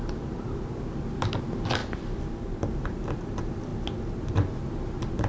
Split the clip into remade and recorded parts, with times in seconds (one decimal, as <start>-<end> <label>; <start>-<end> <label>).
0.0-5.3 recorded